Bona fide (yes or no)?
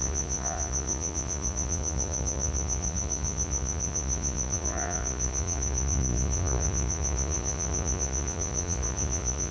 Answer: no